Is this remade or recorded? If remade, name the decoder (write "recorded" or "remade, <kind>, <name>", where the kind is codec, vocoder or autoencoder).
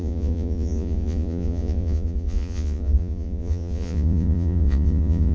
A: remade, vocoder, Vocos